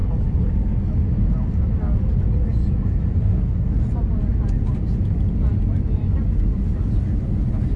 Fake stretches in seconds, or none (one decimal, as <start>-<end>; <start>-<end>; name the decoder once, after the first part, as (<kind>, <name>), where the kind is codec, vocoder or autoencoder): 3.2-3.7 (codec, SNAC)